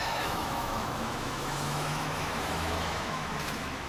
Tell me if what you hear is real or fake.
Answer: fake